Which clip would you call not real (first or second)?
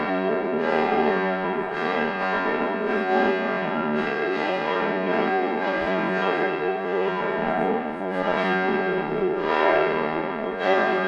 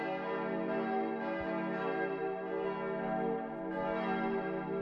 first